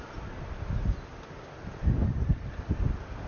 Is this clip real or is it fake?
real